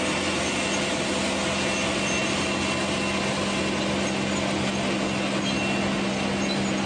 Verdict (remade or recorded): recorded